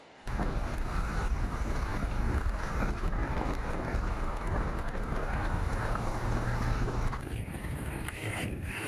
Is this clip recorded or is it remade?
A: remade